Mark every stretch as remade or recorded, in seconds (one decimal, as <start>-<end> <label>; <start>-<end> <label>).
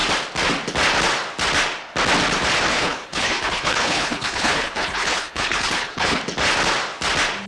0.0-2.7 recorded; 2.7-6.2 remade; 6.2-7.5 recorded